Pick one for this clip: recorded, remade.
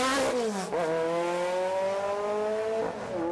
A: recorded